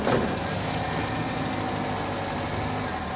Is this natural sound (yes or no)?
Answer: yes